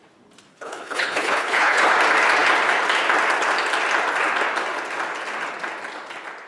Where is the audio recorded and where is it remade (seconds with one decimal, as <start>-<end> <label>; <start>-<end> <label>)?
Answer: 0.0-0.5 recorded; 0.5-1.8 remade; 1.8-6.5 recorded